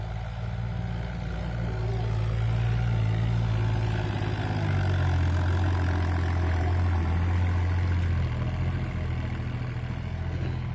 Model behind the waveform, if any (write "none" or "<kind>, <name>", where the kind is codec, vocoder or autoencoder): none